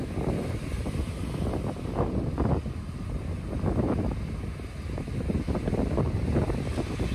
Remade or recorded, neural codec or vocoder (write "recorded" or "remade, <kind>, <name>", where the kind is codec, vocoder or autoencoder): recorded